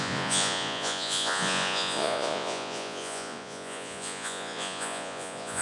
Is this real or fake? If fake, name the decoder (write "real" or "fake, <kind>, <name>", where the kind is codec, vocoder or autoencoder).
fake, vocoder, Vocos